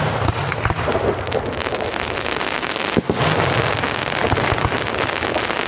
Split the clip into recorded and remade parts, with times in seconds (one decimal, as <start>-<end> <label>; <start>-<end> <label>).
0.0-5.7 recorded